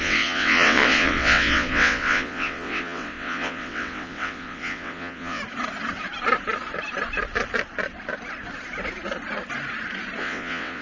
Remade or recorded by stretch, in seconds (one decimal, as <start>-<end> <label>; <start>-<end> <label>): 0.0-5.4 remade; 5.4-10.2 recorded; 10.2-10.8 remade